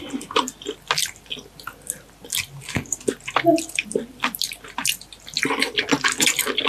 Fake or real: real